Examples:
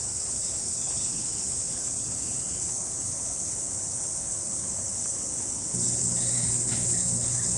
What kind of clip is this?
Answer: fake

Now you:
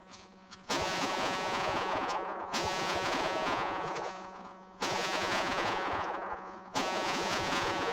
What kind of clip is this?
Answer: fake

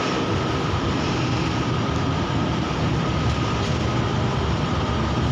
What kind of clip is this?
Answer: fake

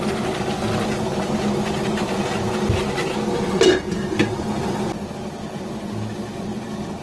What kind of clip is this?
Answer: real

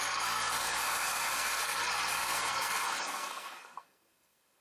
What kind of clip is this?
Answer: fake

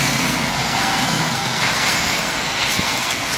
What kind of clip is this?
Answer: fake